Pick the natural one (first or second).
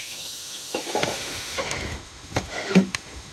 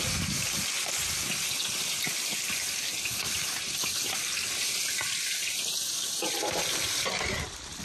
second